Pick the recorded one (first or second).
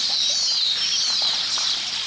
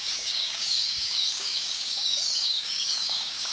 first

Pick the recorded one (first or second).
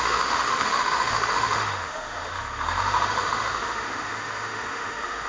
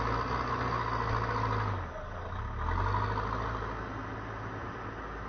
second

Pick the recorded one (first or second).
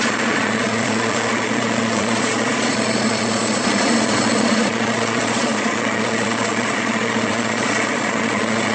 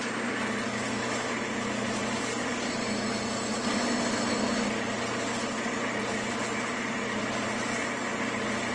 second